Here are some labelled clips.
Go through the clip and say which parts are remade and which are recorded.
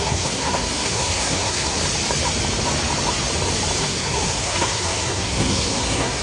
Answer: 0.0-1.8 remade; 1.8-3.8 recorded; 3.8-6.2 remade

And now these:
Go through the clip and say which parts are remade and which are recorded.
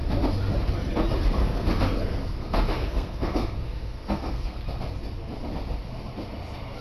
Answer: 0.0-1.4 recorded; 1.4-4.6 remade; 4.6-6.8 recorded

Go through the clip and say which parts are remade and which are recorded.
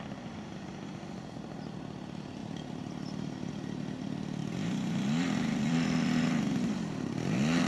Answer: 0.0-2.4 recorded; 2.4-3.5 remade; 3.5-4.4 recorded; 4.4-6.7 remade; 6.7-7.7 recorded